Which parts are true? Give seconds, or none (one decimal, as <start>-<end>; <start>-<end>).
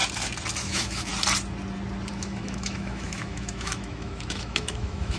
0.0-0.6; 1.1-2.1